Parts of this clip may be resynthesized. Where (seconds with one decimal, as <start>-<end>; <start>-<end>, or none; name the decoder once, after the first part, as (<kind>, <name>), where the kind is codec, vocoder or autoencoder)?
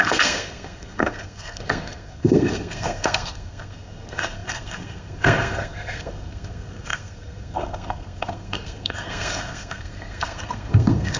0.0-11.2 (codec, SNAC)